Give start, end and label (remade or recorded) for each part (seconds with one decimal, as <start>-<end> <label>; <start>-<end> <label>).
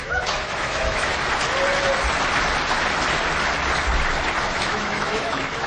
0.0-1.1 remade; 1.1-4.4 recorded; 4.4-5.7 remade